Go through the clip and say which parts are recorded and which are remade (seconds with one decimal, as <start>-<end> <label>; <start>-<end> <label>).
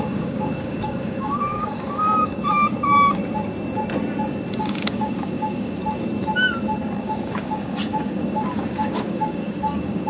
0.0-3.2 remade; 3.2-4.6 recorded; 4.6-5.8 remade; 5.8-7.0 recorded; 7.0-10.1 remade